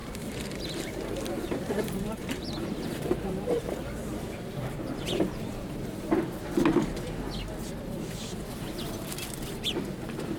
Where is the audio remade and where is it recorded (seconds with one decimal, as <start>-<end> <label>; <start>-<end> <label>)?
0.0-3.7 remade; 3.7-5.5 recorded; 5.5-6.2 remade; 6.2-10.4 recorded